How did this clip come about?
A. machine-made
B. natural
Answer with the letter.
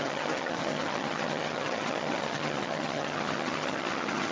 A